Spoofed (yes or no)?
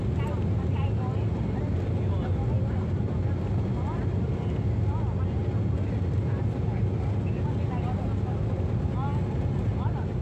no